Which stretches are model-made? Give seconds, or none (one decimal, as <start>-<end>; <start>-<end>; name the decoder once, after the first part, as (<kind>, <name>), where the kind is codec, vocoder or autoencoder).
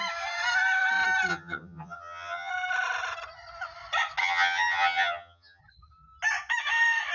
1.3-2.5 (vocoder, HiFi-GAN); 4.2-5.6